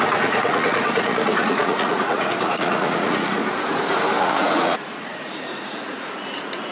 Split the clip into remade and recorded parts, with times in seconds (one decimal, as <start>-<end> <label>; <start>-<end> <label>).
0.0-3.4 remade; 3.4-4.2 recorded; 4.2-6.7 remade

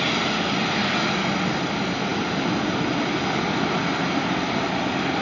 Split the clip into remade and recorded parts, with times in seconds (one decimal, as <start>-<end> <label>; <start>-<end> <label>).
0.0-5.2 recorded

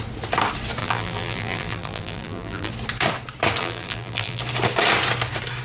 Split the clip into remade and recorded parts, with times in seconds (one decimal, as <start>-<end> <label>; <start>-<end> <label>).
0.0-0.8 recorded; 0.8-2.7 remade; 2.7-3.6 recorded; 3.6-4.4 remade; 4.4-5.6 recorded

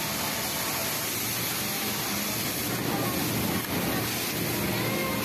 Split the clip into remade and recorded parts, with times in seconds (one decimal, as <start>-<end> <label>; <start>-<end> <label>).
0.0-5.2 recorded

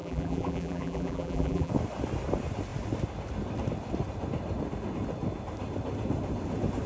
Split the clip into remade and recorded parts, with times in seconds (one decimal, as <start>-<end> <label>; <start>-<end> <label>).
0.0-1.7 remade; 1.7-6.9 recorded